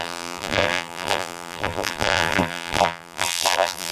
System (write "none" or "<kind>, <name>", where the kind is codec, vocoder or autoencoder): vocoder, BigVGAN v2